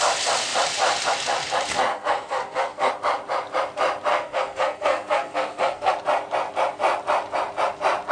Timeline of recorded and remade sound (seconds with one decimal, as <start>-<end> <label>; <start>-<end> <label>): 0.0-1.9 recorded; 1.9-2.9 remade; 2.9-4.1 recorded; 4.1-5.9 remade; 5.9-8.1 recorded